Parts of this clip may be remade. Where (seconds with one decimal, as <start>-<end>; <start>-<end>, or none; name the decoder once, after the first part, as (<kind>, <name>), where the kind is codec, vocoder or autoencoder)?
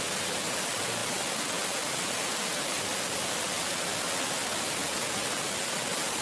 none